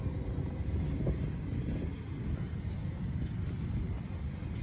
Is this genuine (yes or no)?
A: yes